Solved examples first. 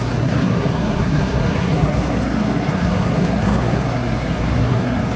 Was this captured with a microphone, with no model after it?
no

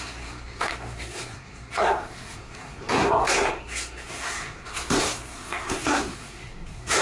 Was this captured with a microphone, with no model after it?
no